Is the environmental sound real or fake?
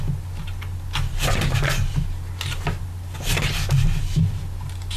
real